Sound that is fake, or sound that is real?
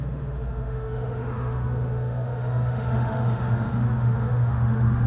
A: fake